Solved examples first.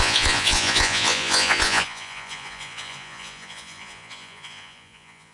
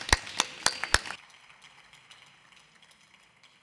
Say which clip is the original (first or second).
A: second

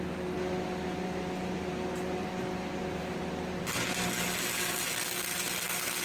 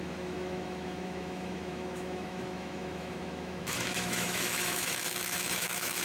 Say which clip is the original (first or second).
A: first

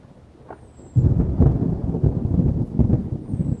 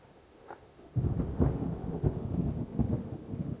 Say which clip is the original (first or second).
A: first